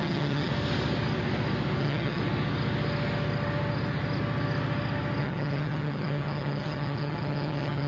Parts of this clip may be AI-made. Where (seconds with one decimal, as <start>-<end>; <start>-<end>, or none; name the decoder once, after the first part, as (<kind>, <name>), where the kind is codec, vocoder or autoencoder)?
0.0-0.5 (vocoder, HiFi-GAN); 1.8-2.2; 5.2-7.9